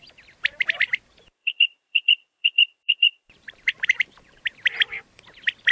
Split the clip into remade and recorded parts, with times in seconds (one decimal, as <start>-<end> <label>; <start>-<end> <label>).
0.0-1.4 recorded; 1.4-4.4 remade; 4.4-5.7 recorded